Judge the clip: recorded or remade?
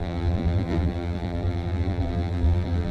remade